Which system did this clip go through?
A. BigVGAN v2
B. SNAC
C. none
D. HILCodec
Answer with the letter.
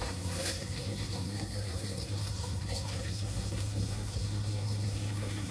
B